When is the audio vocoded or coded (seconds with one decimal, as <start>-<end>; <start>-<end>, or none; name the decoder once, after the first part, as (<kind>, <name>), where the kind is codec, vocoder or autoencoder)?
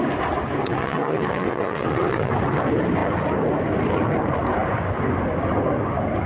0.6-2.3 (vocoder, Vocos)